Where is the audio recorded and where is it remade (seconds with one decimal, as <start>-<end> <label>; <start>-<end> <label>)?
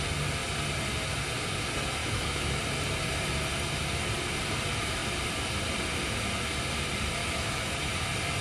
0.0-2.0 recorded; 2.0-2.6 remade; 2.6-7.2 recorded; 7.2-7.9 remade; 7.9-8.4 recorded